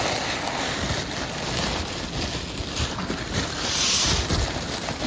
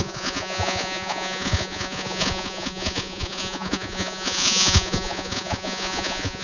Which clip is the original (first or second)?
first